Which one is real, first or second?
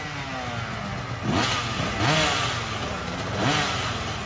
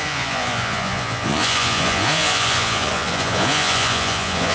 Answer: first